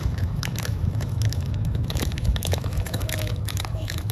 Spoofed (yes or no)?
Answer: yes